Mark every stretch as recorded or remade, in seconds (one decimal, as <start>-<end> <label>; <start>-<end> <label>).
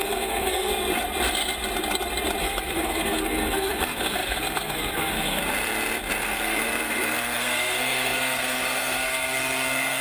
0.0-0.7 remade; 0.7-2.4 recorded; 2.4-5.4 remade; 5.4-6.2 recorded; 6.2-10.0 remade